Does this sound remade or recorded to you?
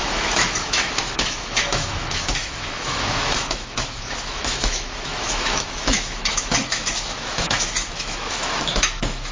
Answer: remade